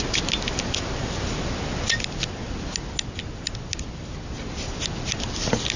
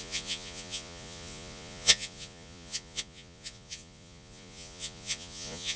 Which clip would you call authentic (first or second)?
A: first